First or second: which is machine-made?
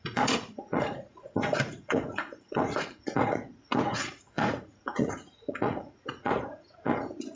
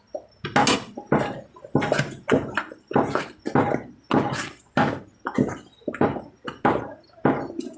first